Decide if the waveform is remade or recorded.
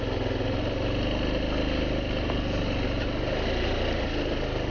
recorded